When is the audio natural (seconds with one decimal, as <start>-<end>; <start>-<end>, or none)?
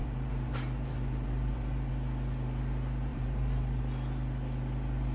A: 1.9-3.1; 3.8-5.1